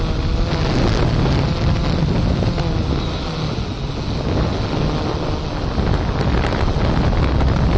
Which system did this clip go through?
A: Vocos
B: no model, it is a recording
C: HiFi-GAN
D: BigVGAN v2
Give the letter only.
B